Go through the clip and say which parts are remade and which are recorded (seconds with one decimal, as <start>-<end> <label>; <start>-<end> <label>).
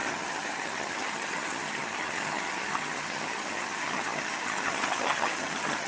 0.0-5.9 remade